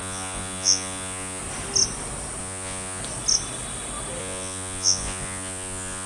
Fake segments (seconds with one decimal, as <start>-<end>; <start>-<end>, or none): 0.0-1.4; 2.4-3.0; 4.2-6.1